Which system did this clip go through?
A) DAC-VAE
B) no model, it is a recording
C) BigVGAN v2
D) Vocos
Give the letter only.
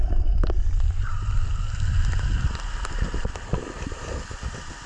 B